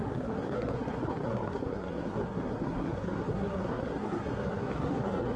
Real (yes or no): no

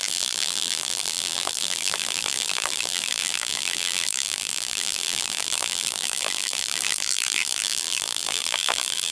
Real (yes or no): no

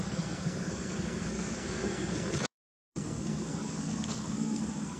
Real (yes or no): no